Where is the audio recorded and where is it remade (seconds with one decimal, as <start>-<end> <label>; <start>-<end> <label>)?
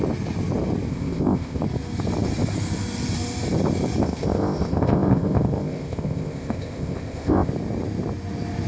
0.0-0.9 recorded; 0.9-1.6 remade; 1.6-4.0 recorded; 4.0-7.5 remade; 7.5-8.7 recorded